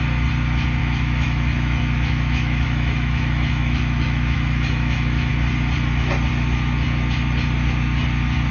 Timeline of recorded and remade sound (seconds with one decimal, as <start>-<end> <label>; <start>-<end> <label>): 0.0-0.8 recorded; 0.8-5.3 remade; 5.3-8.5 recorded